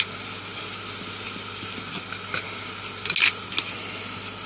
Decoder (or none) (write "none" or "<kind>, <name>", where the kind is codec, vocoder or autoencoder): none